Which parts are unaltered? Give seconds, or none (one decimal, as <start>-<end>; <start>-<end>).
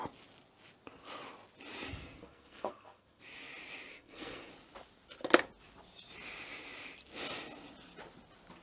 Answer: 0.0-1.9; 3.2-3.9; 4.5-8.6